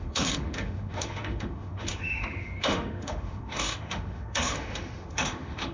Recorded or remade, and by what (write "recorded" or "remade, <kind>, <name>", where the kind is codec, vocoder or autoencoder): remade, autoencoder, DAC-VAE